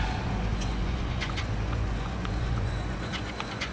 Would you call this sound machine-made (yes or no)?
yes